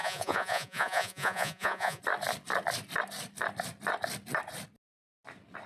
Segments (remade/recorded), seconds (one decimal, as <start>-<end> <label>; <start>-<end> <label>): 0.0-2.0 remade; 2.0-5.7 recorded